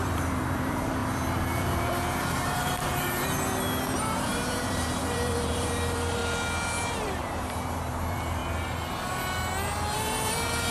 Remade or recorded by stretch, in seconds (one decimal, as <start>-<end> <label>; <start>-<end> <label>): 0.0-6.2 remade; 6.2-6.9 recorded; 6.9-8.4 remade; 8.4-9.9 recorded; 9.9-10.7 remade

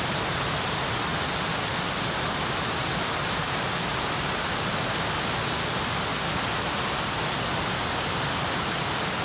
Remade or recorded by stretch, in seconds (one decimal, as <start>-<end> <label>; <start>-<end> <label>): 0.0-9.2 recorded

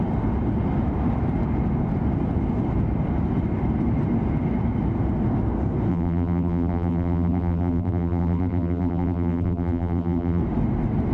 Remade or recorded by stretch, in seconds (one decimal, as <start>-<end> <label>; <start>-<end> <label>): 0.0-5.9 recorded; 5.9-10.4 remade; 10.4-11.1 recorded